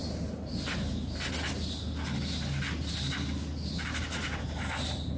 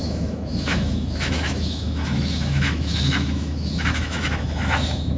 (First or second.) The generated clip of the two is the second